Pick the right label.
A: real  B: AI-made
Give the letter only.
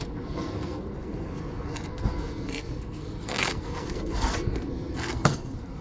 B